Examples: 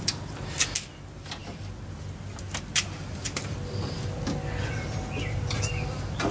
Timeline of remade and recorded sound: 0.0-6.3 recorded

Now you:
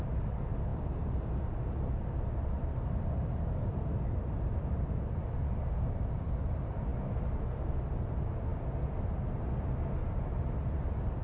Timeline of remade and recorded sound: 0.0-11.2 recorded

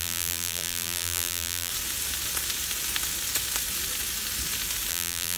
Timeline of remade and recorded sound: 0.0-1.7 remade; 1.7-4.9 recorded; 4.9-5.4 remade

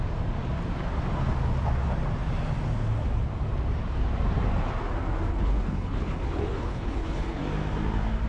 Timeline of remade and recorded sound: 0.0-5.3 recorded; 5.3-7.4 remade; 7.4-8.3 recorded

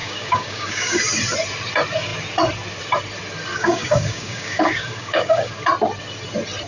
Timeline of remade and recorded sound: 0.0-1.0 remade; 1.0-3.5 recorded; 3.5-5.5 remade; 5.5-6.7 recorded

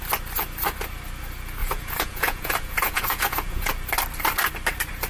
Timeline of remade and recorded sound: 0.0-1.6 recorded; 1.6-3.7 remade; 3.7-5.1 recorded

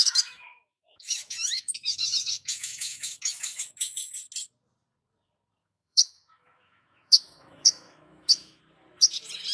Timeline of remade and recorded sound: 0.0-4.1 remade; 4.1-5.6 recorded; 5.6-8.6 remade; 8.6-9.5 recorded